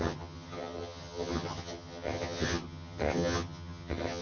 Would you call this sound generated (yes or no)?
yes